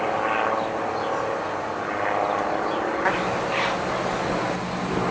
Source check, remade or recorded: recorded